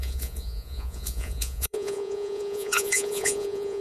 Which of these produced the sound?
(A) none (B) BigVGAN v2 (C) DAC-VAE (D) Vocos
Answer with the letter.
D